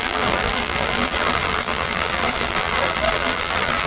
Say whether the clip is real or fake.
fake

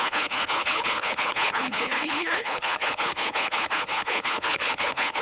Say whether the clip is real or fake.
fake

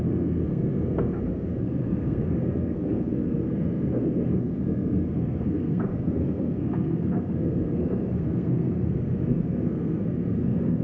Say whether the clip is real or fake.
fake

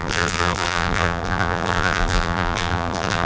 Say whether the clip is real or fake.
fake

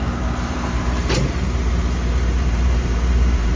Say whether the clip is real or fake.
fake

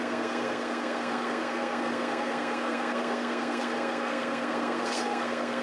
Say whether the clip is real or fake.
fake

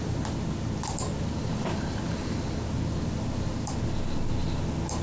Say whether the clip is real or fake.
real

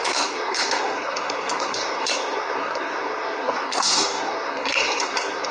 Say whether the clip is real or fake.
fake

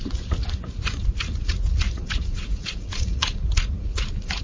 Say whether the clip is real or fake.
fake